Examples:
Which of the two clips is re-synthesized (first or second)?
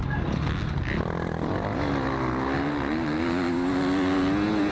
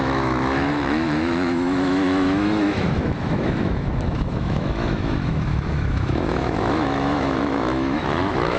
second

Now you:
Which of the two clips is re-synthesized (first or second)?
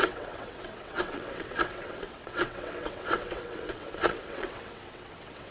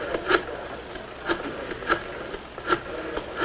first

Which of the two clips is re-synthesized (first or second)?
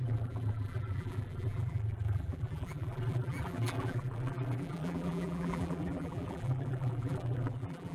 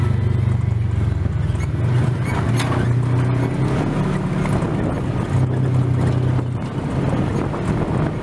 first